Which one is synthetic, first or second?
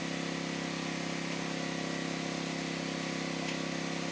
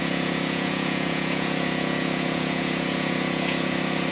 second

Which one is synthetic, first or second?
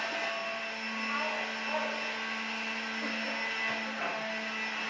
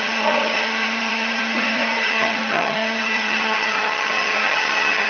second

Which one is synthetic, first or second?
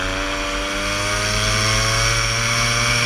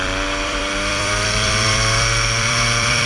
second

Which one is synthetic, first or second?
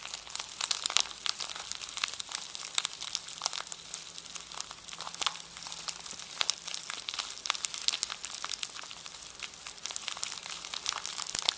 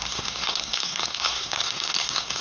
second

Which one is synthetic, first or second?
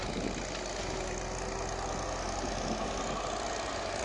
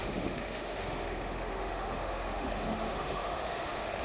second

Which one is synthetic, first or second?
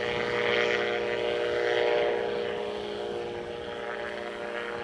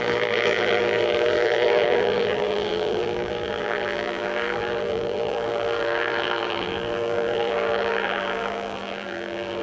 second